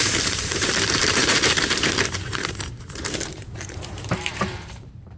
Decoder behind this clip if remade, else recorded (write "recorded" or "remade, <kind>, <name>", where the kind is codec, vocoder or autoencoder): remade, vocoder, BigVGAN v2